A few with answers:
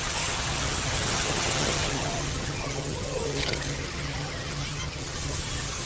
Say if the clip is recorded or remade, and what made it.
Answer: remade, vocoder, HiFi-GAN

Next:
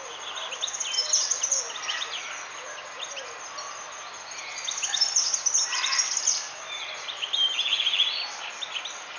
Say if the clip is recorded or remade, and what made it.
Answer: recorded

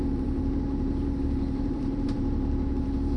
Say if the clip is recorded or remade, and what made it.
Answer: remade, vocoder, BigVGAN v2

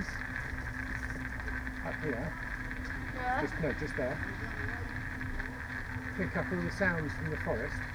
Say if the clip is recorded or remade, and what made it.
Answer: recorded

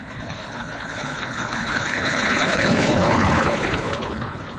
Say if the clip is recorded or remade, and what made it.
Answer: remade, codec, HILCodec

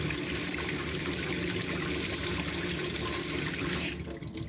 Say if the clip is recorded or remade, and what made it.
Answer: recorded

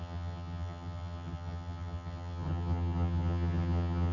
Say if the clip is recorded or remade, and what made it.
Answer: remade, vocoder, HiFi-GAN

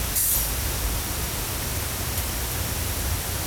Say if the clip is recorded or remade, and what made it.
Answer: recorded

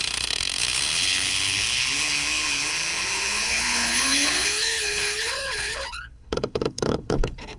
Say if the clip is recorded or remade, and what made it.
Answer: remade, codec, HILCodec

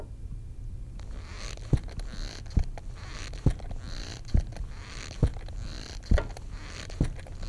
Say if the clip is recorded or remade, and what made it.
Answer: recorded